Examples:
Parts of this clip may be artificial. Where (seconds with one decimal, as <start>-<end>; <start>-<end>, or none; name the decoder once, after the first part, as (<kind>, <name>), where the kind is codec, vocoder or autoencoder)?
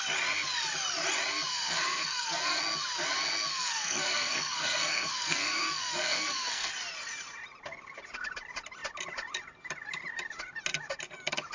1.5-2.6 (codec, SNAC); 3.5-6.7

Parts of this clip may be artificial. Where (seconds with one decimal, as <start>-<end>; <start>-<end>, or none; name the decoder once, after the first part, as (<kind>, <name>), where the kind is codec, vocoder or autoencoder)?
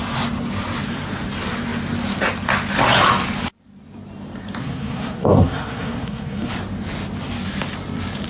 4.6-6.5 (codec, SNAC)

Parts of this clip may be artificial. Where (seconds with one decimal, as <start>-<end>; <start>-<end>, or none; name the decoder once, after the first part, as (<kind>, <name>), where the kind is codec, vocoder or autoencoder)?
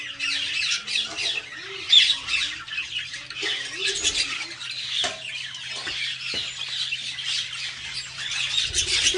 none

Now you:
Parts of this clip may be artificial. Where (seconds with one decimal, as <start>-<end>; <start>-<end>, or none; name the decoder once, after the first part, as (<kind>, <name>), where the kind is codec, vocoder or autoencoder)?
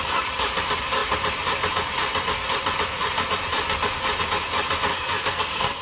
4.9-5.8 (codec, SNAC)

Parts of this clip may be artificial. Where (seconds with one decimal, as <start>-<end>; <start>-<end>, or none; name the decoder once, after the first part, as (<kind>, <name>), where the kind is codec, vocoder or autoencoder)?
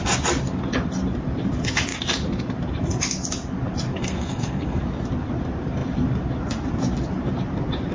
3.9-4.8 (codec, SNAC)